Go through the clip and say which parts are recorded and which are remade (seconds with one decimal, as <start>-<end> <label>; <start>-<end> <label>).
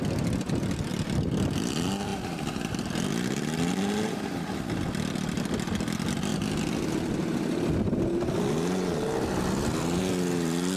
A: 0.0-10.8 recorded